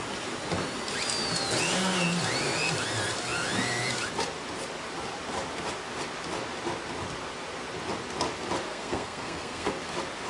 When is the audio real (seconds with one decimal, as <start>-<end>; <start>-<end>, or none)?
0.0-8.7; 9.7-10.3